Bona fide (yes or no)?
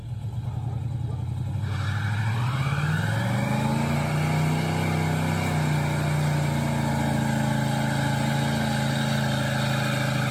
yes